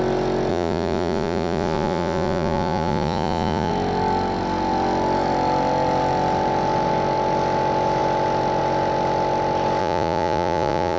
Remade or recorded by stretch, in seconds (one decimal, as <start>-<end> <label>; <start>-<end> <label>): 0.0-0.5 recorded; 0.5-3.7 remade; 3.7-9.8 recorded; 9.8-11.0 remade